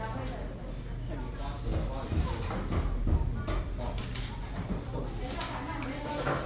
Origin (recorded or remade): recorded